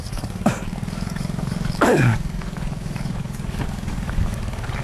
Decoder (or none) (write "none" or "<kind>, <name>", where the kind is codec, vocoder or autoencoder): codec, DAC